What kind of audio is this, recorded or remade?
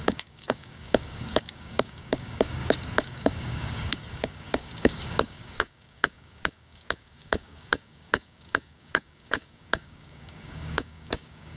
remade